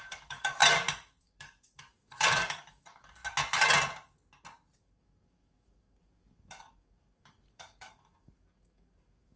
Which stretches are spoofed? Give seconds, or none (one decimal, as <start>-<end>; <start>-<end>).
0.0-0.6; 1.2-3.2; 4.8-9.4